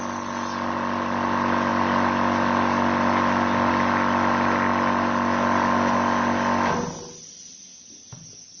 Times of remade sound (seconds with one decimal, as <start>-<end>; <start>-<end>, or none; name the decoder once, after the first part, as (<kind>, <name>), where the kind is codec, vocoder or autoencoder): none